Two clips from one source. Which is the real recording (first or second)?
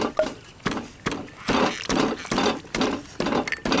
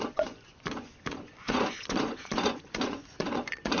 first